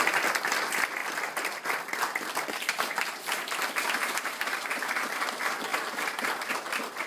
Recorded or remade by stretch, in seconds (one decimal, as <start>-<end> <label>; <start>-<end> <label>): 0.0-1.0 recorded; 1.0-4.4 remade; 4.4-5.7 recorded; 5.7-6.5 remade; 6.5-7.1 recorded